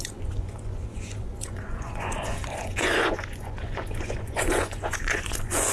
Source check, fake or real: fake